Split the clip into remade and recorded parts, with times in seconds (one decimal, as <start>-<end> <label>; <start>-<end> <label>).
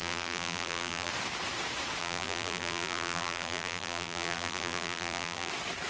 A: 0.0-1.1 remade; 1.1-2.0 recorded; 2.0-5.5 remade; 5.5-5.9 recorded